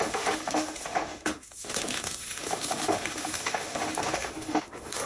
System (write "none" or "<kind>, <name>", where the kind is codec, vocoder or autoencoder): autoencoder, DAC-VAE